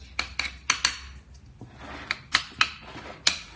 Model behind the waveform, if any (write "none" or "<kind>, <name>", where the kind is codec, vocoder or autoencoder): none